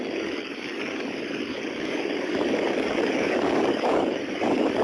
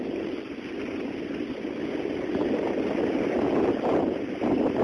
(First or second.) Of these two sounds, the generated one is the first